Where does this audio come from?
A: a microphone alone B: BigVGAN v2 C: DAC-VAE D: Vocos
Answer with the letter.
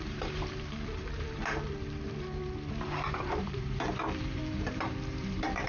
B